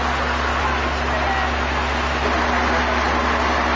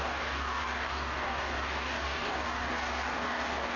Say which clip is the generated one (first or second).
second